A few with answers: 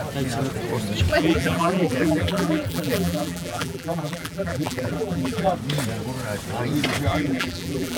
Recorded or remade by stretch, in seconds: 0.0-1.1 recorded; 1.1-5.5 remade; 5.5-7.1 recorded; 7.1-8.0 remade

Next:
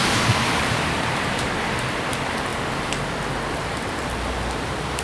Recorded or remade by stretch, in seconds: 0.0-2.5 remade; 2.5-3.5 recorded; 3.5-5.0 remade

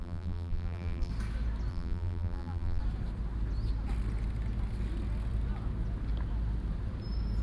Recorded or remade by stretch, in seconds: 0.0-1.1 remade; 1.1-1.7 recorded; 1.7-2.8 remade; 2.8-7.4 recorded

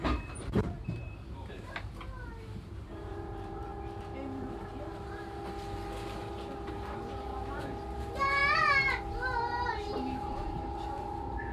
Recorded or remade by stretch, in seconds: 0.0-3.7 remade; 3.7-7.5 recorded; 7.5-8.4 remade; 8.4-9.4 recorded; 9.4-11.5 remade

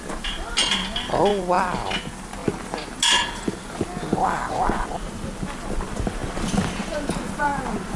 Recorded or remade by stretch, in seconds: 0.0-8.0 recorded

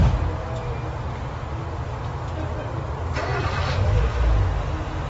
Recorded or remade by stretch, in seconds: 0.0-5.1 remade